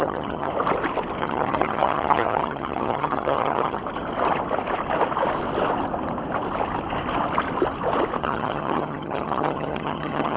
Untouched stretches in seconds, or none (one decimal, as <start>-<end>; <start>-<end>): 0.5-1.2; 3.8-8.2